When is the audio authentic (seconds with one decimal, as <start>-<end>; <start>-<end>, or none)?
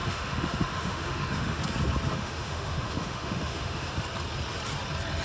1.6-2.1; 3.9-5.2